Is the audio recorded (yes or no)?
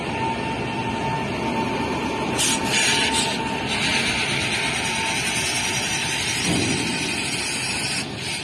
yes